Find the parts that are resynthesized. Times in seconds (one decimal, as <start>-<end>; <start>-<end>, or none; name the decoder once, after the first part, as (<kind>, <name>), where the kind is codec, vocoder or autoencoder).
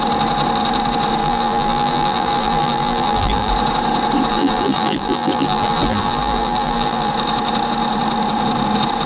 1.2-3.5 (vocoder, BigVGAN v2); 4.3-7.1